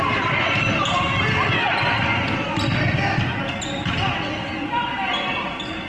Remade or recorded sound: recorded